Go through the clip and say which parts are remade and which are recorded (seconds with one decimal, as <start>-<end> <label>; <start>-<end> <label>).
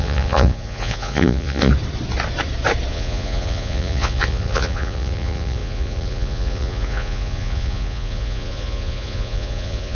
0.0-1.7 remade; 1.7-2.9 recorded; 2.9-9.9 remade